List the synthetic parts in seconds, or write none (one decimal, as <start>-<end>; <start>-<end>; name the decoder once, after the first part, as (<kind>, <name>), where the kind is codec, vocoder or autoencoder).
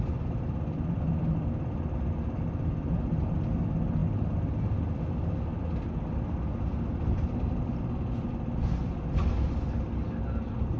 none